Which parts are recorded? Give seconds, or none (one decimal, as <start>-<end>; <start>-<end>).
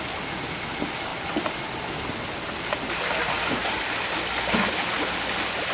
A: 0.0-5.7